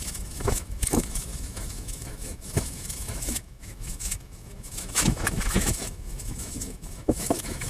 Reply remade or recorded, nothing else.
remade